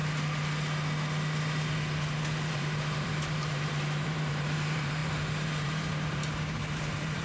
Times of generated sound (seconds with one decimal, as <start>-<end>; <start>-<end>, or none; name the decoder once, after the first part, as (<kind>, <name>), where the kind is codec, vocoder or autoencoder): 2.2-7.2 (vocoder, BigVGAN v2)